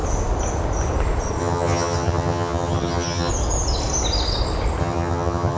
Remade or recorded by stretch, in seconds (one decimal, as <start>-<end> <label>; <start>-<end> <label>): 0.0-1.4 recorded; 1.4-3.3 remade; 3.3-4.8 recorded; 4.8-5.6 remade